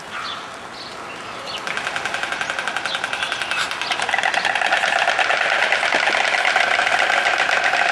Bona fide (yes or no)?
yes